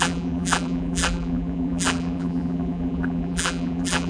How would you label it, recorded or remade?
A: remade